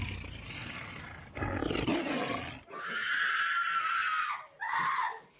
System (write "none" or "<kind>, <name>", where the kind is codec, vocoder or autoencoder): none